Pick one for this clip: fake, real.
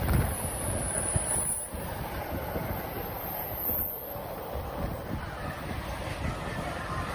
fake